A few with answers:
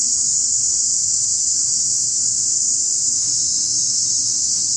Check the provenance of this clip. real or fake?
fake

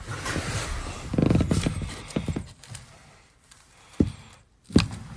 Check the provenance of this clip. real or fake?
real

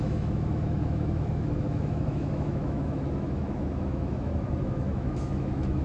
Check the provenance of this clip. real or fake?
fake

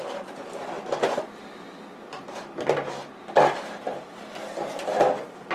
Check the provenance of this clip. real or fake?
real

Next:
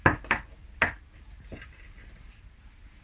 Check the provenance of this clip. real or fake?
real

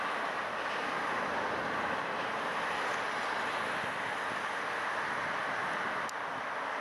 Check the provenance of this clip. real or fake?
real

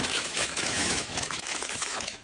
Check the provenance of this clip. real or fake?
fake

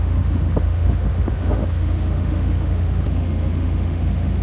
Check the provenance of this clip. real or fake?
fake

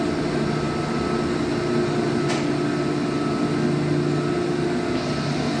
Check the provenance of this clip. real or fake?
real